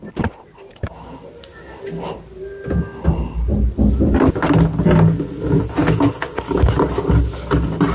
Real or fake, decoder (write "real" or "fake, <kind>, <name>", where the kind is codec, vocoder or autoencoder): real